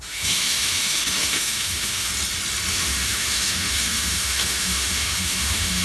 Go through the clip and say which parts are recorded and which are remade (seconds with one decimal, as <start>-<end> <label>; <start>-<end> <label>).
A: 0.0-2.1 remade; 2.1-2.7 recorded; 2.7-5.8 remade